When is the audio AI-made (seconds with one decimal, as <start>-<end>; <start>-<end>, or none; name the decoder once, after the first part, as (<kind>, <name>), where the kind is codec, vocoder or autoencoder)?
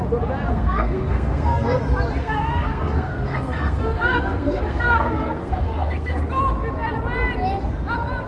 0.5-1.8 (codec, SNAC); 2.2-6.2